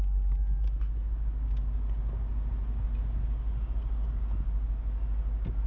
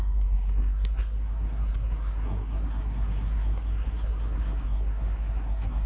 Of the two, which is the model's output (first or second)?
second